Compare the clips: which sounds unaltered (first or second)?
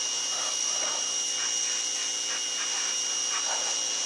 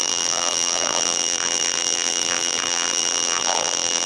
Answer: first